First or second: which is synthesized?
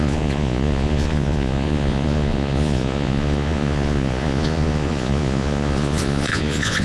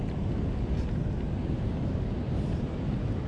first